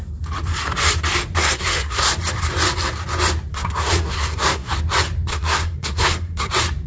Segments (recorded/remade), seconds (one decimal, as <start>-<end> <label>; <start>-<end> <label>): 0.0-1.4 recorded; 1.4-2.1 remade; 2.1-3.5 recorded; 3.5-4.7 remade; 4.7-5.3 recorded; 5.3-6.5 remade; 6.5-6.9 recorded